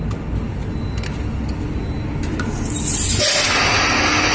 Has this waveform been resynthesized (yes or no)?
no